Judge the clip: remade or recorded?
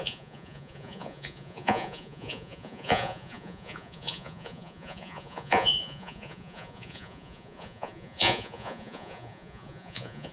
remade